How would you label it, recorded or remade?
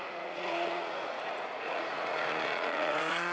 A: remade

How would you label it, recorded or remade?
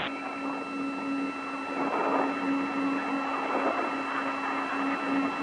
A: recorded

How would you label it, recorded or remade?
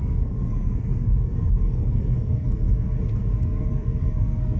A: remade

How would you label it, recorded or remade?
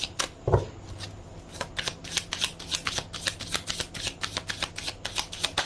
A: recorded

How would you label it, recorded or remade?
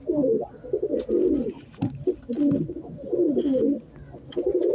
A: recorded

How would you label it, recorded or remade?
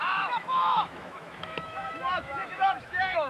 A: remade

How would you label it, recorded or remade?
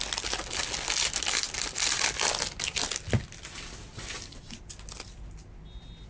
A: recorded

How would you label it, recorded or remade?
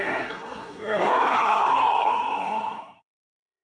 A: remade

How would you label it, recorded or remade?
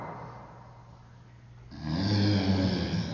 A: recorded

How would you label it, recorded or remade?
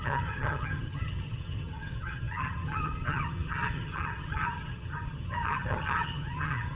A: remade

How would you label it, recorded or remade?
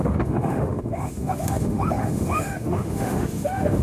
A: remade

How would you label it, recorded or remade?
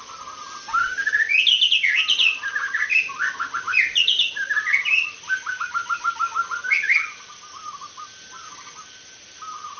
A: recorded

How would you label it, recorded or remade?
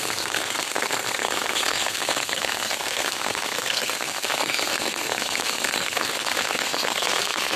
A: remade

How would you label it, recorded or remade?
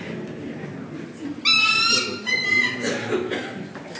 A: recorded